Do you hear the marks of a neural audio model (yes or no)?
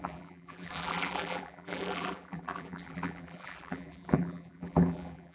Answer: yes